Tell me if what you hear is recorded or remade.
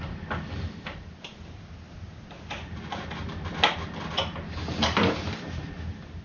recorded